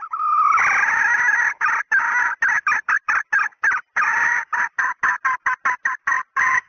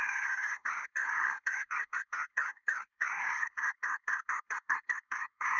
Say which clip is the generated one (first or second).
second